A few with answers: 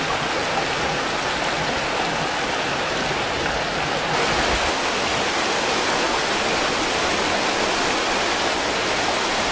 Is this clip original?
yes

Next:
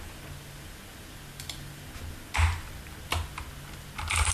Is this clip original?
yes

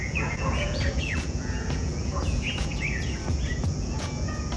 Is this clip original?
no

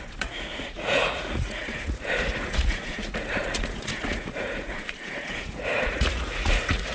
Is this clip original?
no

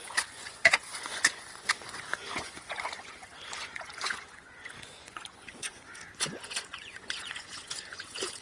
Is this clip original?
no